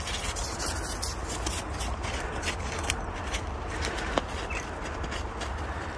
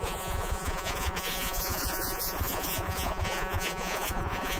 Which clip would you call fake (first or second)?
second